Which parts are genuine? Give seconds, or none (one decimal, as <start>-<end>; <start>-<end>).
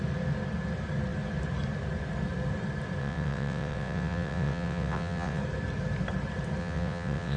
0.0-3.0; 5.4-6.6